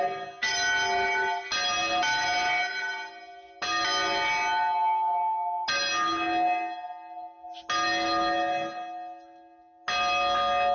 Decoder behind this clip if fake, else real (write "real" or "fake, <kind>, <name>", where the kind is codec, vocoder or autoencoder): real